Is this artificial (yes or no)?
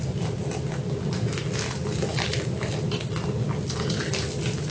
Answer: no